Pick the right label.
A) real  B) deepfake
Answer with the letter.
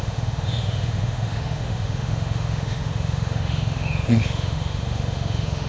B